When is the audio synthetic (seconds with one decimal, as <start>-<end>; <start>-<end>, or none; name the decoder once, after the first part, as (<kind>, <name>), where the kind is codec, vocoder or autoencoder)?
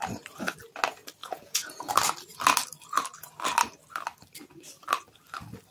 1.2-1.9 (vocoder, Vocos)